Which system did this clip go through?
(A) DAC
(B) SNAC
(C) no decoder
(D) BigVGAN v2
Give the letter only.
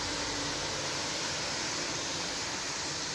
C